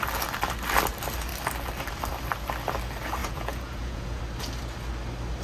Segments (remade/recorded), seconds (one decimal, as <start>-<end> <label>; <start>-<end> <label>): 0.0-3.2 recorded; 3.2-4.2 remade; 4.2-5.4 recorded